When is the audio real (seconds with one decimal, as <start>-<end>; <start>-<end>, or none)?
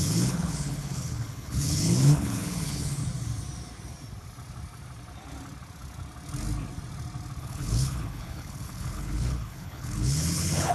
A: 3.0-7.4